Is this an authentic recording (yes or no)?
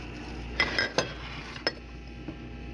yes